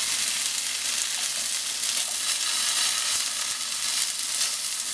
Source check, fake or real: real